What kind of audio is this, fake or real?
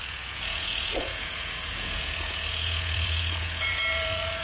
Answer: fake